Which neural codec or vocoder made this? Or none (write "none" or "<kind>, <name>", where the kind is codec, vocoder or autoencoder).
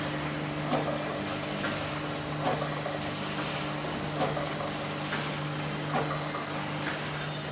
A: none